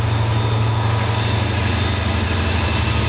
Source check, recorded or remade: recorded